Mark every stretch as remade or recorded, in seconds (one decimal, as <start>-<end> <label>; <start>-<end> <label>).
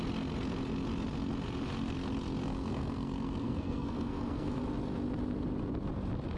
0.0-2.4 recorded; 2.4-4.6 remade; 4.6-6.4 recorded